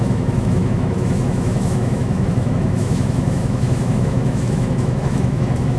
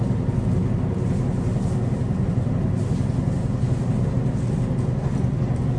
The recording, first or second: second